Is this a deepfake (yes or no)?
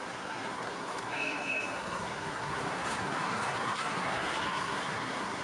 yes